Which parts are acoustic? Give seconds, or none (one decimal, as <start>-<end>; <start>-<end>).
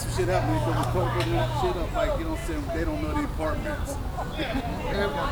0.0-0.5; 1.6-5.3